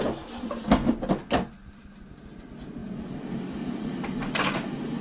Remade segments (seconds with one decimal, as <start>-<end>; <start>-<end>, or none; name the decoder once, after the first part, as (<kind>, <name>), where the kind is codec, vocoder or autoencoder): none